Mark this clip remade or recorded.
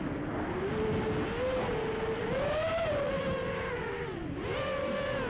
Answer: recorded